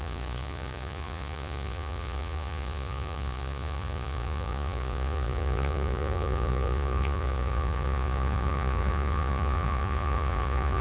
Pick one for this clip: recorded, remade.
remade